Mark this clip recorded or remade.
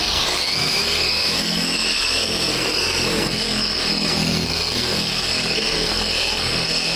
remade